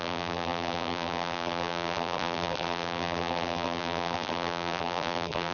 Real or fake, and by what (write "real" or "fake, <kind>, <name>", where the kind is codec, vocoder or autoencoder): fake, vocoder, BigVGAN v2